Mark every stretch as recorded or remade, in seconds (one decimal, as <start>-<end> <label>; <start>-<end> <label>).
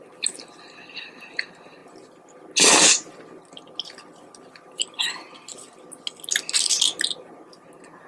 0.0-8.1 recorded